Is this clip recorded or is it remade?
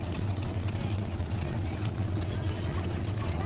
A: remade